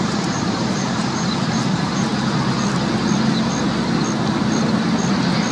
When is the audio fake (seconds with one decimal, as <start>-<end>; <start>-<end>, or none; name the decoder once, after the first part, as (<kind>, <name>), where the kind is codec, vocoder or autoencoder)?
0.0-2.1 (vocoder, BigVGAN v2)